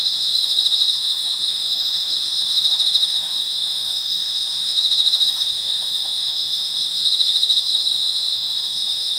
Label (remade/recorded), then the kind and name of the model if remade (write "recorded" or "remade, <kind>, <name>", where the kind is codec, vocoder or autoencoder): remade, autoencoder, DAC-VAE